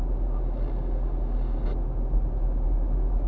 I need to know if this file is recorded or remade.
recorded